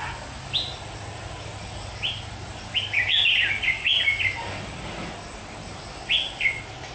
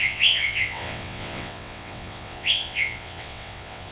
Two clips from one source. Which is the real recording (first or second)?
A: first